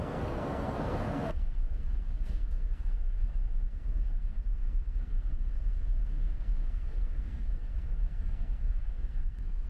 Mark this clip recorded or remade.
remade